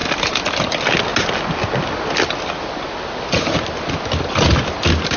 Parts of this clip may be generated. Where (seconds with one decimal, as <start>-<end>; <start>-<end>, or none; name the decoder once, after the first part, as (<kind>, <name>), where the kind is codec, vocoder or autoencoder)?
none